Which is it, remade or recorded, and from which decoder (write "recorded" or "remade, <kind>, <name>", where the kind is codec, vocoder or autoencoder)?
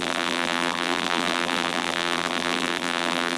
remade, vocoder, BigVGAN v2